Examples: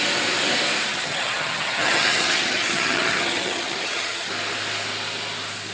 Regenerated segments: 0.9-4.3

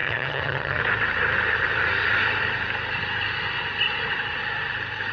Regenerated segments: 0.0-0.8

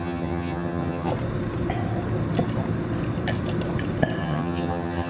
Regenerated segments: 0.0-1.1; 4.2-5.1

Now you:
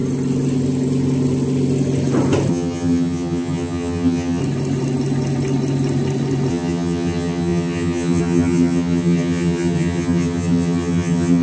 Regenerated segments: 2.5-4.4; 6.5-11.4